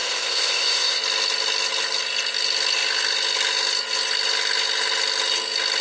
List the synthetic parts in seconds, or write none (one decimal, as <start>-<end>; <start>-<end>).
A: 0.0-1.0